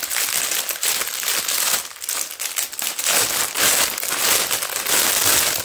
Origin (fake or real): real